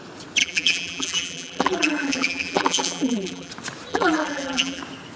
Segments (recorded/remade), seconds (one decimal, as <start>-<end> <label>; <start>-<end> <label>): 0.0-0.4 recorded; 0.4-3.5 remade; 3.5-3.9 recorded; 3.9-4.8 remade; 4.8-5.2 recorded